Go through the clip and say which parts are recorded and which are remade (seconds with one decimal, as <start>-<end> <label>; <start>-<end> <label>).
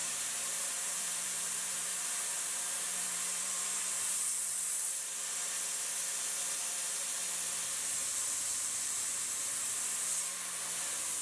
0.0-5.1 remade; 5.1-8.0 recorded; 8.0-9.3 remade; 9.3-11.2 recorded